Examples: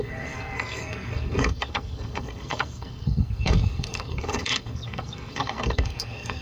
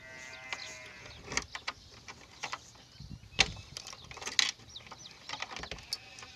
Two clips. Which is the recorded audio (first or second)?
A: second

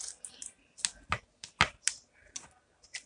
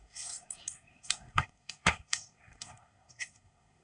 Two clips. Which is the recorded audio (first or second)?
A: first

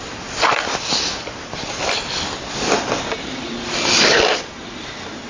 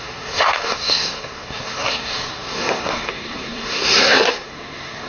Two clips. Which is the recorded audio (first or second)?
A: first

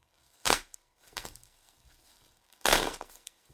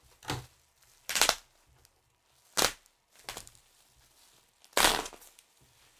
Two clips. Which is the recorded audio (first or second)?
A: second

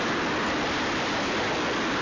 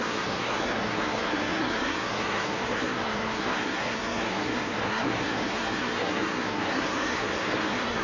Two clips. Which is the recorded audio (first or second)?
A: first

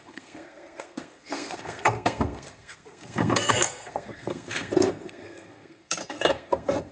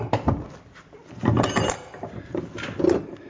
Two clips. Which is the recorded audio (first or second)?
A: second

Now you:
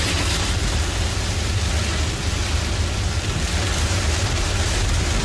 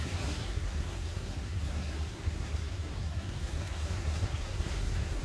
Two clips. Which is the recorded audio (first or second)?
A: first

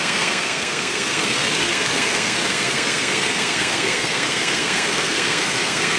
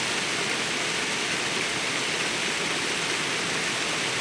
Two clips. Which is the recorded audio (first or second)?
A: second